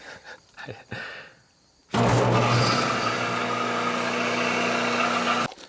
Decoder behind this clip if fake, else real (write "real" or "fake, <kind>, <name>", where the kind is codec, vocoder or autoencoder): real